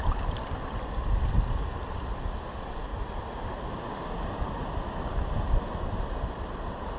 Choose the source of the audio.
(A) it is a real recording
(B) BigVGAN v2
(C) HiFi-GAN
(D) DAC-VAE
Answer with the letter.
A